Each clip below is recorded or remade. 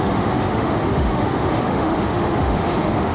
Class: remade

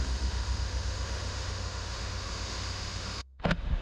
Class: remade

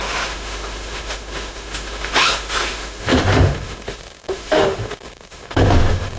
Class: remade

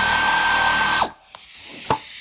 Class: recorded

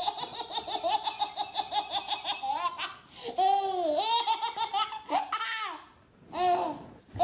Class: recorded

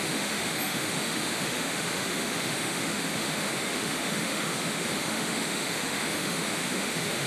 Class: remade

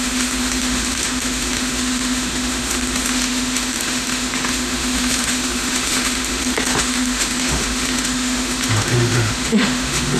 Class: remade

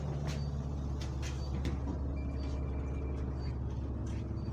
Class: recorded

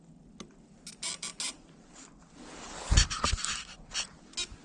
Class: recorded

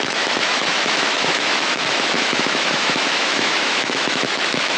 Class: remade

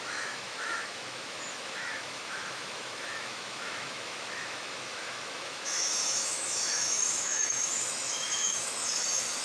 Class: remade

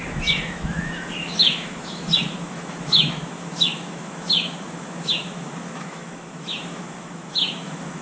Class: remade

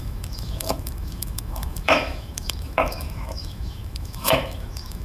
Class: remade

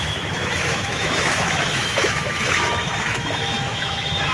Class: remade